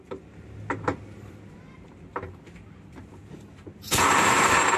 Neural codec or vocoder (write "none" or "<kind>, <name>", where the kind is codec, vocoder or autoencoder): vocoder, BigVGAN v2